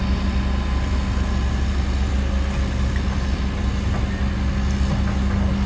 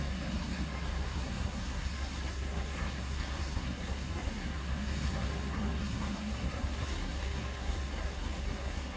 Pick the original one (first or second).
first